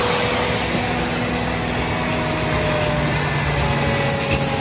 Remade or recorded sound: recorded